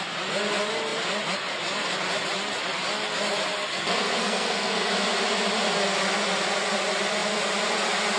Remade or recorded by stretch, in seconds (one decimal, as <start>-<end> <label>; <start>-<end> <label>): 0.0-3.7 recorded; 3.7-4.9 remade; 4.9-8.2 recorded